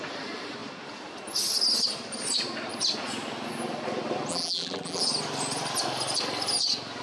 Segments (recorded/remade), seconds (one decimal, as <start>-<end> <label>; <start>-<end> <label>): 0.0-4.3 recorded; 4.3-5.0 remade; 5.0-7.0 recorded